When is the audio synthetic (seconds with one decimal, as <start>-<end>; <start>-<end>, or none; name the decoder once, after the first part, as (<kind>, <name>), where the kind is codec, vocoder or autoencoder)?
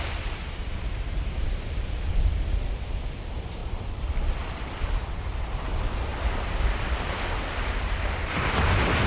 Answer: 0.4-2.1 (vocoder, BigVGAN v2); 3.6-5.3